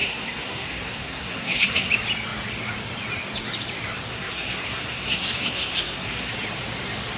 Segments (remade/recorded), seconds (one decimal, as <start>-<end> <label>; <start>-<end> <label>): 0.0-1.9 remade; 1.9-4.1 recorded; 4.1-6.3 remade; 6.3-7.2 recorded